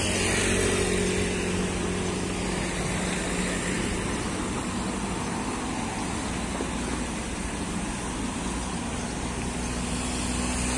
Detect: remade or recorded recorded